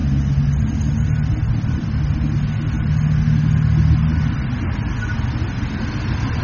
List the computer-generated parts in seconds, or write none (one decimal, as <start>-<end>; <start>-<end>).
1.5-2.1; 5.9-6.4